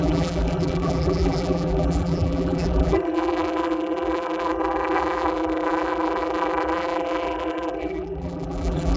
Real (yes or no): no